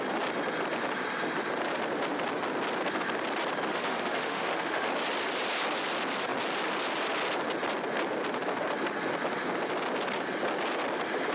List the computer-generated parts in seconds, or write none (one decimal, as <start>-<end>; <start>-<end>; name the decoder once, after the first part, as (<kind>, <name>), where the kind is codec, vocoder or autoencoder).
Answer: 3.7-4.9 (autoencoder, DAC-VAE)